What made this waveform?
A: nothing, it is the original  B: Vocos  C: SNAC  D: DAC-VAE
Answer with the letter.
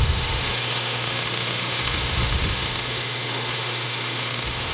D